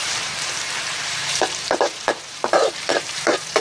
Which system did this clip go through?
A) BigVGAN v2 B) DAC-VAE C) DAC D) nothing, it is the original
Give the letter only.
A